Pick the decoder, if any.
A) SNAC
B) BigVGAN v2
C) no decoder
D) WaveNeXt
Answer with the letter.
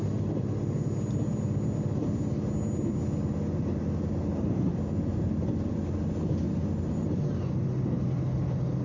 C